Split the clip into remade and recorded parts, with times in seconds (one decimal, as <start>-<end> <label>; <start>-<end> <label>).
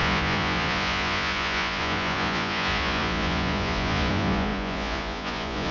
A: 0.0-5.7 remade